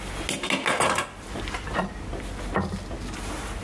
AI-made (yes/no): no